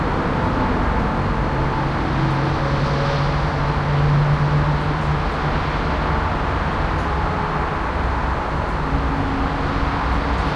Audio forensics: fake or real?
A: real